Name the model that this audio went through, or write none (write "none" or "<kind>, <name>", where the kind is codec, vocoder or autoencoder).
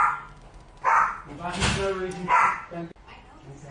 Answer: none